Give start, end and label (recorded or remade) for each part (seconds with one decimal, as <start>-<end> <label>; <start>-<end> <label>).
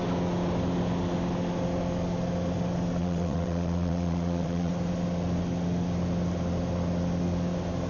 0.0-3.0 recorded; 3.0-4.7 remade; 4.7-7.9 recorded